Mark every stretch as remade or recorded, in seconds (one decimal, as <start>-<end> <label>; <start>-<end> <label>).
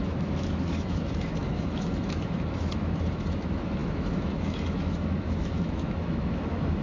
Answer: 0.0-6.8 remade